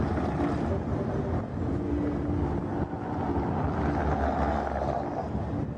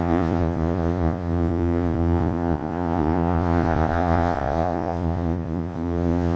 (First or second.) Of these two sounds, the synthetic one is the second